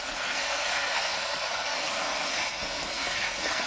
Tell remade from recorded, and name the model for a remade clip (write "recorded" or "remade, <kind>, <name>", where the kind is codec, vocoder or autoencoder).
remade, codec, SNAC